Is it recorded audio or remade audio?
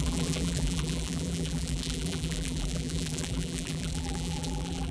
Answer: remade